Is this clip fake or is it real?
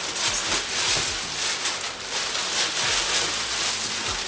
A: real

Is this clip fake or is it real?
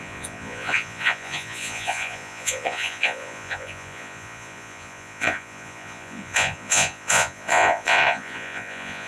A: fake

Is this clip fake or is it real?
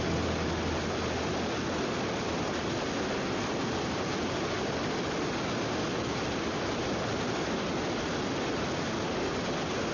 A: real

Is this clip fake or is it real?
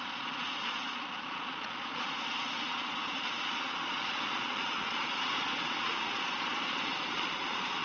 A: fake